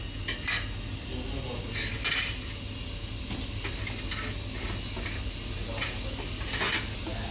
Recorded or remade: recorded